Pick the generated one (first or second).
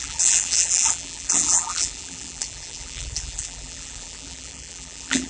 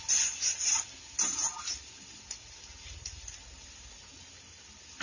first